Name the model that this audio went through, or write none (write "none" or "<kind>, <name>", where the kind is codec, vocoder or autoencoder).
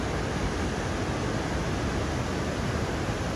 none